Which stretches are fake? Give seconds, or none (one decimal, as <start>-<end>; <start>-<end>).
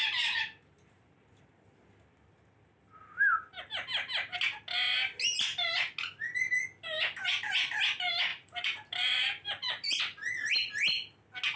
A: 0.0-1.4; 8.3-10.0